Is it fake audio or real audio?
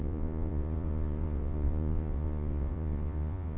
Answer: fake